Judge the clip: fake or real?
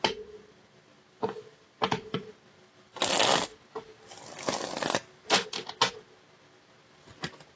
real